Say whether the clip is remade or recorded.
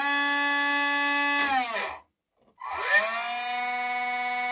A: recorded